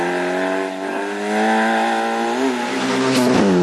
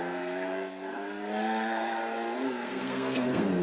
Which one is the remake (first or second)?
second